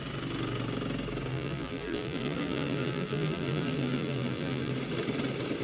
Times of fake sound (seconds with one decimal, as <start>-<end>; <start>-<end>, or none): 1.3-4.7